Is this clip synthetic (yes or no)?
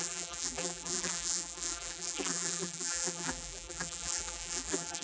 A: yes